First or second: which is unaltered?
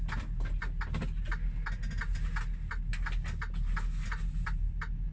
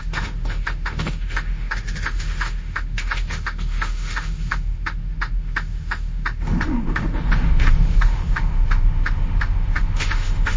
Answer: first